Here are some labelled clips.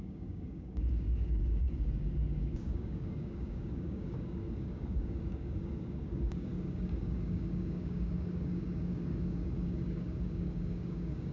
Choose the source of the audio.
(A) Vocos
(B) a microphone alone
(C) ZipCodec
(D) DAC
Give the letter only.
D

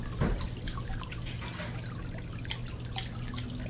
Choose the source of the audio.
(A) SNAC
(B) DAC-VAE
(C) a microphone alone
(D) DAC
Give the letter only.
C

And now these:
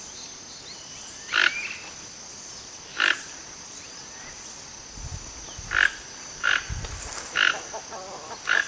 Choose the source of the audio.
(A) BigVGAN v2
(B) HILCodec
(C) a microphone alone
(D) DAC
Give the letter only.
C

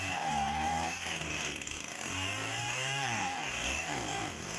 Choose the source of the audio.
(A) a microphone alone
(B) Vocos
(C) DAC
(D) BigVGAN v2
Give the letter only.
C